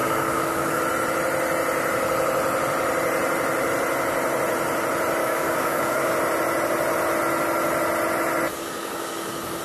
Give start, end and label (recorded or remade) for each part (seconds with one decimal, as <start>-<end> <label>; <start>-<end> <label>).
0.0-0.8 remade; 0.8-5.2 recorded; 5.2-6.1 remade; 6.1-8.5 recorded; 8.5-9.6 remade

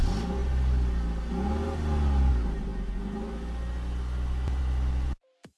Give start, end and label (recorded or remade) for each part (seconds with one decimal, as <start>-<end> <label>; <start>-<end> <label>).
0.0-5.6 recorded

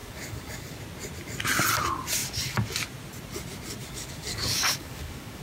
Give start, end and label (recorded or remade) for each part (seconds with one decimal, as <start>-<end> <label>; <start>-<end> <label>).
0.0-0.8 remade; 0.8-3.8 recorded; 3.8-5.4 remade

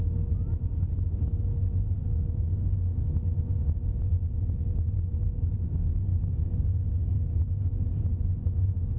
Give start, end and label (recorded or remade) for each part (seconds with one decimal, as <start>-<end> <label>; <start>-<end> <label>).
0.0-2.0 recorded; 2.0-2.5 remade; 2.5-9.0 recorded

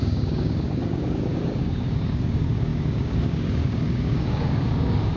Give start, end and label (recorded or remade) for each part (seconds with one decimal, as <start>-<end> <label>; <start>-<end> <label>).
0.0-5.2 remade

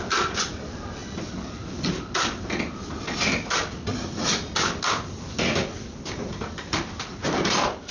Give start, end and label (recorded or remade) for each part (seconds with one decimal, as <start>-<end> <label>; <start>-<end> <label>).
0.0-7.9 recorded

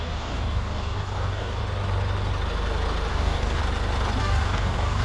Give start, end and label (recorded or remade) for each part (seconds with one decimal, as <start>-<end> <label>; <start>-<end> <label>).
0.0-1.6 remade; 1.6-3.1 recorded; 3.1-3.6 remade; 3.6-4.2 recorded; 4.2-5.0 remade

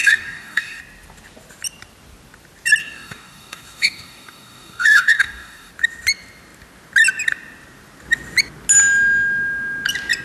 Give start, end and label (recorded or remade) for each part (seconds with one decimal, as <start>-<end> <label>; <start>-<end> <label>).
0.0-0.8 remade; 0.8-2.8 recorded; 2.8-5.7 remade; 5.7-10.2 recorded